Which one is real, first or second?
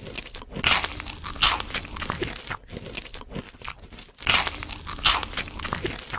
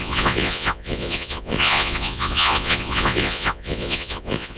first